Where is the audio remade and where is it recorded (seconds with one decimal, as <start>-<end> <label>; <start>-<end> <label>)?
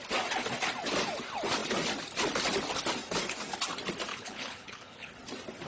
0.0-4.1 recorded; 4.1-5.1 remade; 5.1-5.7 recorded